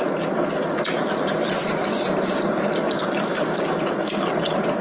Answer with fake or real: real